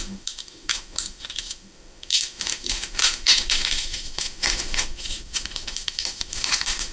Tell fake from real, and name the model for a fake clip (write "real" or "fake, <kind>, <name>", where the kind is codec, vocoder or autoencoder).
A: fake, autoencoder, DAC-VAE